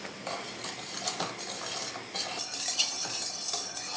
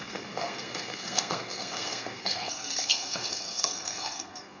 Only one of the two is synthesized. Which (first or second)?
second